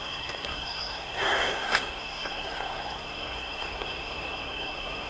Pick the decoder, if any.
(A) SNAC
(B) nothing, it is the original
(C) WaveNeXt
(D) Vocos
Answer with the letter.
A